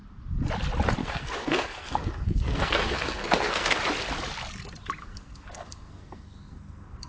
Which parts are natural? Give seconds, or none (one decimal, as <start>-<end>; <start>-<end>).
0.0-1.0; 3.8-5.0

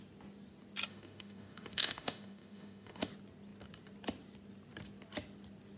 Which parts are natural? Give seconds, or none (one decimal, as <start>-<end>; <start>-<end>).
0.0-0.9; 3.1-5.8

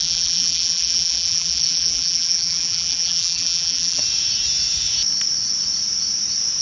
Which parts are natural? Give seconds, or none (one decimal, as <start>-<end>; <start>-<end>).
4.0-6.6

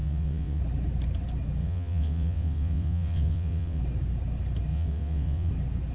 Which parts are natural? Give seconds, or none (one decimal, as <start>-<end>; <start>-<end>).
0.6-1.6; 3.8-4.7; 5.5-5.9

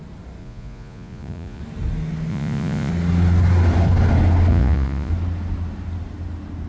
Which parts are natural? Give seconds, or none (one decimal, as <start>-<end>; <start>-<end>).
0.0-0.4; 1.6-2.3; 2.9-4.5; 5.1-6.7

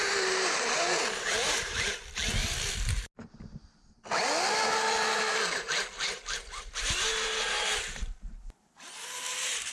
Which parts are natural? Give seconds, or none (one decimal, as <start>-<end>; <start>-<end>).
2.2-5.3

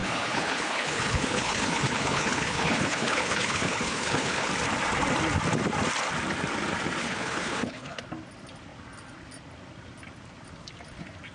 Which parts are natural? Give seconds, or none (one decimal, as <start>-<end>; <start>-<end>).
4.5-7.0; 8.0-11.3